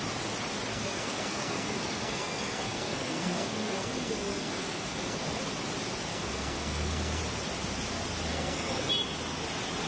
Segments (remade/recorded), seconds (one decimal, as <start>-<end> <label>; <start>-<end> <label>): 0.0-0.7 recorded; 0.7-5.4 remade; 5.4-6.1 recorded; 6.1-7.2 remade; 7.2-8.3 recorded; 8.3-8.9 remade; 8.9-9.9 recorded